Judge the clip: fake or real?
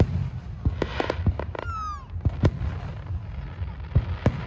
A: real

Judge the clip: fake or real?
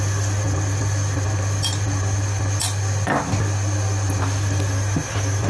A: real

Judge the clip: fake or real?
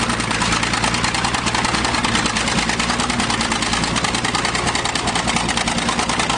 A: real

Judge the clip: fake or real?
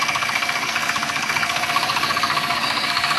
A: fake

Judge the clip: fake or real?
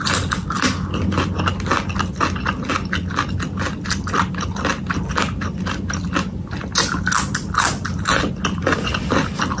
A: real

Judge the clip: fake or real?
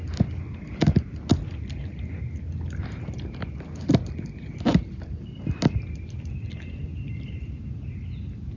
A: real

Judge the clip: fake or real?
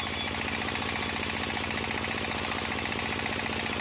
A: real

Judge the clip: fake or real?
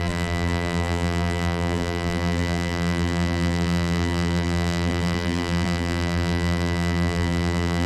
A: fake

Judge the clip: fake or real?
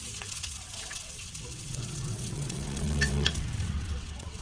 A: fake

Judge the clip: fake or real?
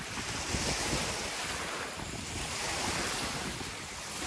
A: real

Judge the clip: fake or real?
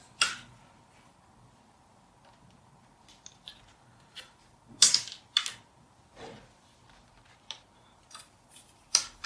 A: real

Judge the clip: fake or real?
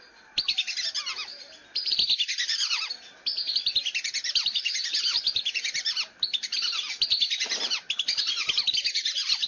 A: fake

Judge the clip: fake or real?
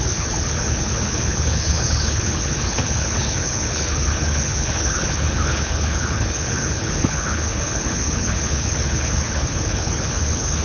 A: fake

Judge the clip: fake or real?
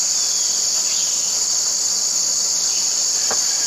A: real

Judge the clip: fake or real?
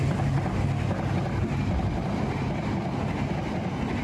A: real